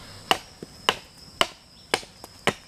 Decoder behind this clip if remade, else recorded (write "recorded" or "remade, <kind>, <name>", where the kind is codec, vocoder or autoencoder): recorded